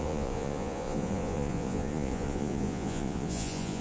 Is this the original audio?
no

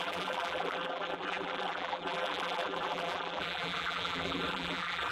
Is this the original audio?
no